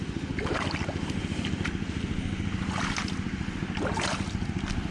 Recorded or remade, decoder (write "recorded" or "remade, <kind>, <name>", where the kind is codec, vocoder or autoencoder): recorded